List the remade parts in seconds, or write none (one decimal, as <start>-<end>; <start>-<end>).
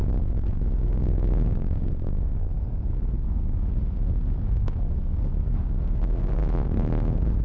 0.0-7.4